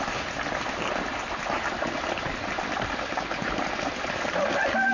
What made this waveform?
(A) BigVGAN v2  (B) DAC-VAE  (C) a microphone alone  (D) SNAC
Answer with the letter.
C